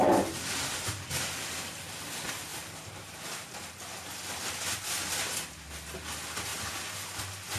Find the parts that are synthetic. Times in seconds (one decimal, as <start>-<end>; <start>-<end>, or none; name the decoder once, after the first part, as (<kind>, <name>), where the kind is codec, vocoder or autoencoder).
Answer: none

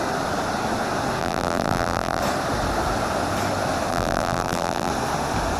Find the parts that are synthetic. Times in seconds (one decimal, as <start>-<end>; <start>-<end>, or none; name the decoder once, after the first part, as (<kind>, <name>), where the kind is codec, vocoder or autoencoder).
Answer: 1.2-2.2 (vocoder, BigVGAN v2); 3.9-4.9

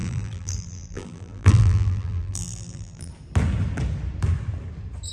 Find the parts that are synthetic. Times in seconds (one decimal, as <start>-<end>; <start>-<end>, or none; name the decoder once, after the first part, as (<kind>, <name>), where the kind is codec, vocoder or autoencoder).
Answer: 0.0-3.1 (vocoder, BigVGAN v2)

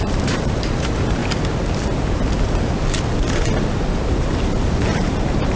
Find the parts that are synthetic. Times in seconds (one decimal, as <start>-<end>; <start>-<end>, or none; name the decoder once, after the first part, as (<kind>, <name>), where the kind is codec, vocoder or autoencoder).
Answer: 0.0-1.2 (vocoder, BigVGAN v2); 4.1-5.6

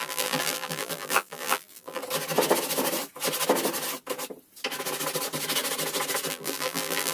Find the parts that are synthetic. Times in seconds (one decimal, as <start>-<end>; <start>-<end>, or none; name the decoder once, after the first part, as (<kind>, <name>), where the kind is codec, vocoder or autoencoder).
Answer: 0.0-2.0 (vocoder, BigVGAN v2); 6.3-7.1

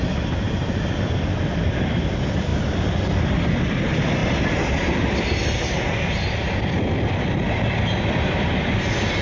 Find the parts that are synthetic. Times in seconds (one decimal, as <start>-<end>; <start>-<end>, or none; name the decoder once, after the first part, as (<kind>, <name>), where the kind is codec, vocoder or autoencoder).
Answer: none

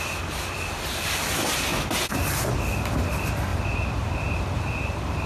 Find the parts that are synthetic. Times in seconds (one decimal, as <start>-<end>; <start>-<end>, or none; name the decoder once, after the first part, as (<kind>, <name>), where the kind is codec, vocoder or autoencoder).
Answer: 3.5-4.5 (vocoder, BigVGAN v2)

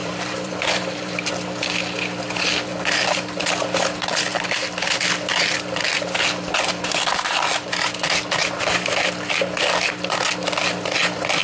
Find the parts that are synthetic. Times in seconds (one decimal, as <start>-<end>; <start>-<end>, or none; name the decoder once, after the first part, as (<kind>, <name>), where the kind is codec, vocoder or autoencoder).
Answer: 0.0-1.3 (vocoder, BigVGAN v2)